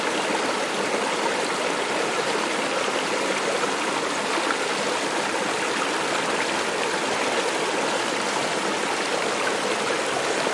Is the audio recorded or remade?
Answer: recorded